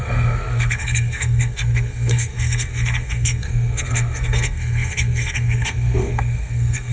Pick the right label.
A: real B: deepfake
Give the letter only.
B